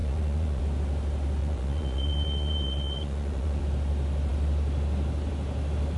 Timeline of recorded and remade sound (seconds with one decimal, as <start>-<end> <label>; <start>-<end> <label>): 0.0-0.6 remade; 0.6-1.4 recorded; 1.4-3.6 remade; 3.6-6.0 recorded